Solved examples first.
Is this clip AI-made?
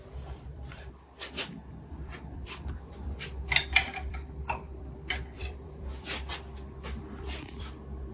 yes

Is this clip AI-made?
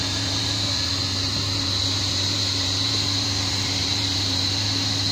yes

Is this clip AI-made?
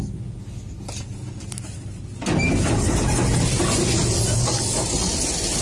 no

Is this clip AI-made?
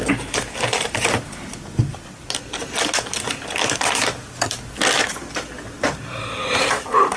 no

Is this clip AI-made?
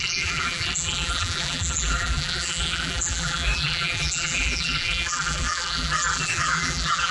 yes